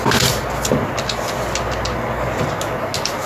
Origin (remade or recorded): recorded